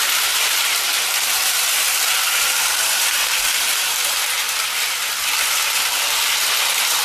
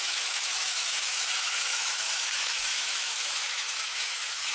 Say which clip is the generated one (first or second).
second